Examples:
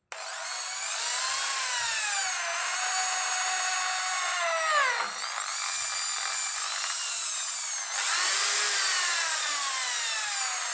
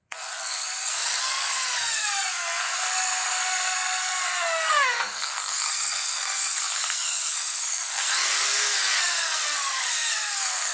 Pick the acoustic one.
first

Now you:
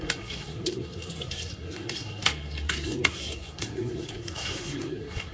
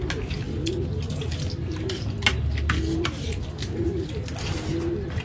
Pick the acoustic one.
second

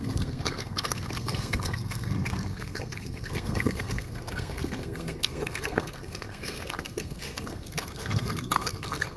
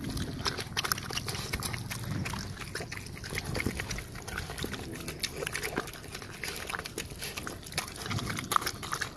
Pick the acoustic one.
second